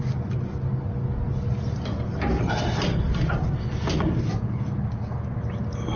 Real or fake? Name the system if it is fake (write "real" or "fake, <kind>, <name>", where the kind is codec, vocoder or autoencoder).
real